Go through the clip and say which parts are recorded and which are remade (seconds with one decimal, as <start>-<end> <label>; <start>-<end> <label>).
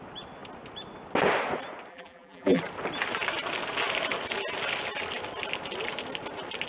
0.0-1.9 recorded; 1.9-2.6 remade; 2.6-6.7 recorded